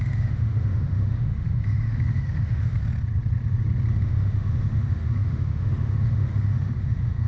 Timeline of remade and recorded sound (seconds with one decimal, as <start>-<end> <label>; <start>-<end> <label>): 0.0-2.8 remade; 2.8-3.9 recorded; 3.9-7.3 remade